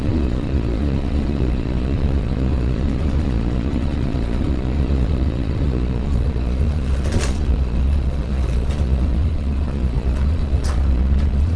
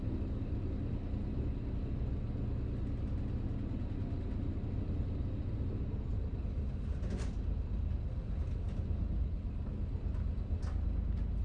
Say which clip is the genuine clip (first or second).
second